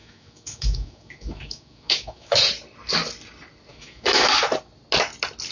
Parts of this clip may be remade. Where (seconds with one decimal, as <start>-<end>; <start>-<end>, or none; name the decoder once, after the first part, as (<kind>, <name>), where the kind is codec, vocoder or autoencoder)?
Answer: 0.0-2.4 (autoencoder, DAC-VAE); 3.7-4.3